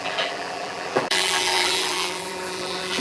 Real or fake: fake